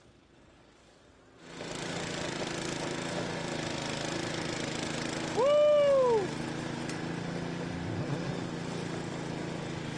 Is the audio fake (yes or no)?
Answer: no